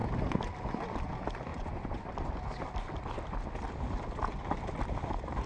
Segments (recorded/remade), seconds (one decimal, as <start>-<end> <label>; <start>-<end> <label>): 0.0-1.5 recorded; 1.5-2.1 remade; 2.1-5.5 recorded